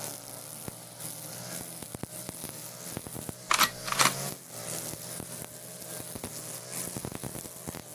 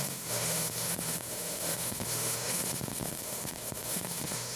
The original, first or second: first